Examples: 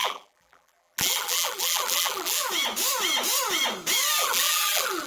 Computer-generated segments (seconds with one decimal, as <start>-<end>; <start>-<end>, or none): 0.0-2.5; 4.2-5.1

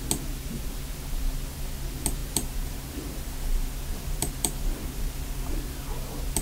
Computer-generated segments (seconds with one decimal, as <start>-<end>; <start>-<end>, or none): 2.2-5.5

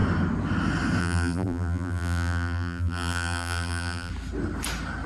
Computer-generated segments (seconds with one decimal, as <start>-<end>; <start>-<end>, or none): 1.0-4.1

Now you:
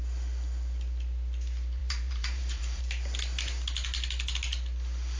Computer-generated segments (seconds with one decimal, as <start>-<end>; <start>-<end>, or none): 1.8-2.8